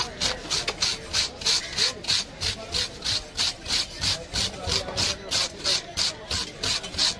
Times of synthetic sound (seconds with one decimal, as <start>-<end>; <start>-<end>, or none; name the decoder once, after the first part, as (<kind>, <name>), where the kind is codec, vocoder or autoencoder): none